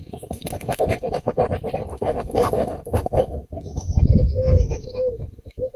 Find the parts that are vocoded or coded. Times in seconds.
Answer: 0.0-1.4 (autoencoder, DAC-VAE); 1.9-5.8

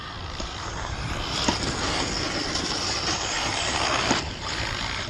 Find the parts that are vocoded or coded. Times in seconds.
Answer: 0.0-0.7 (vocoder, BigVGAN v2); 3.5-5.1

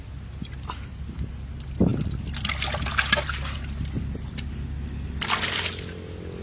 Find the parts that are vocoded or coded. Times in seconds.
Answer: none

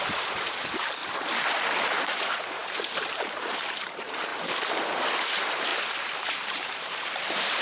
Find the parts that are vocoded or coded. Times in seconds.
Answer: 0.0-1.0 (vocoder, BigVGAN v2); 2.0-7.6